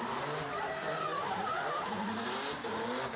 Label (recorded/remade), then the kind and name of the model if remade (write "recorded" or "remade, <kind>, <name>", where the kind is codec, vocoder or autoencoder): recorded